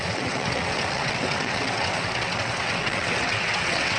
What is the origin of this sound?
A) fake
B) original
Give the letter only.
A